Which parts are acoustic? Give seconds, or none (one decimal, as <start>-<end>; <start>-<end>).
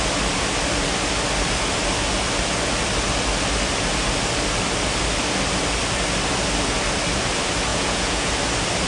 0.0-7.7; 8.3-8.9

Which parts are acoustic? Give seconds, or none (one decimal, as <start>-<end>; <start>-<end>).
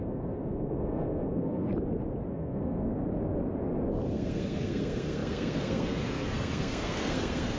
1.7-2.3; 2.9-4.1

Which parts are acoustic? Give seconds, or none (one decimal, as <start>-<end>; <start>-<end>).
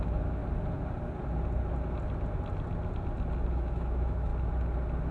0.4-3.5; 4.3-5.1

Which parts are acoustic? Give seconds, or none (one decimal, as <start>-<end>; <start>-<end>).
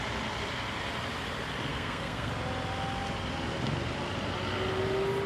0.0-1.7; 2.3-5.3